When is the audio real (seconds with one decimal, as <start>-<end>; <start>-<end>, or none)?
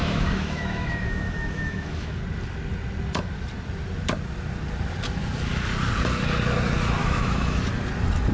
2.2-7.0; 7.6-8.3